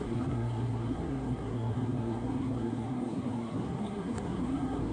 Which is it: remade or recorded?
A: remade